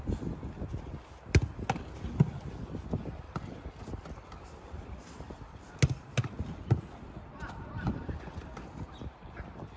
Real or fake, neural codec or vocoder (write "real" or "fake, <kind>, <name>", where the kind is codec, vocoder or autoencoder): real